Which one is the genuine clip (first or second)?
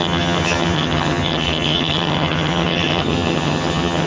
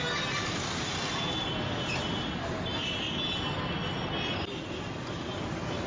second